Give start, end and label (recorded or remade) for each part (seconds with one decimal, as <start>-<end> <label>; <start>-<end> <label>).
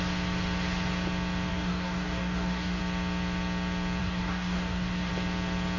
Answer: 0.0-1.5 recorded; 1.5-2.8 remade; 2.8-4.0 recorded; 4.0-5.1 remade; 5.1-5.8 recorded